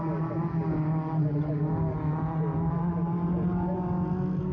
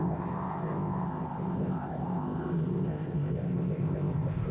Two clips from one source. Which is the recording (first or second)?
first